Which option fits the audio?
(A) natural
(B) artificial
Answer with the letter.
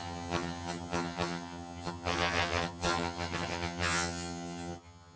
B